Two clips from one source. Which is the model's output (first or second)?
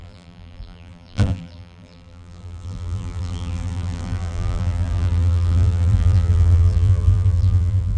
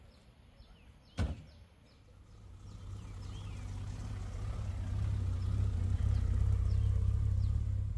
first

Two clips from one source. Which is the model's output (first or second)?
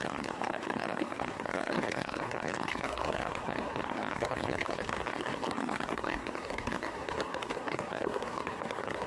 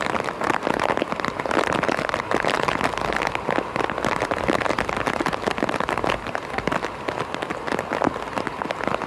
first